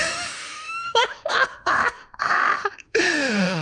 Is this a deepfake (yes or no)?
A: yes